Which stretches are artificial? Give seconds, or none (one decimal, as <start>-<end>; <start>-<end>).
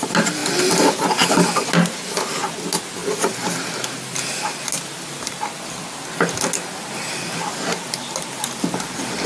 none